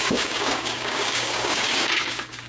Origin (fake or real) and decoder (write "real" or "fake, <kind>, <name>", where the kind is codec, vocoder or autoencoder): fake, codec, DAC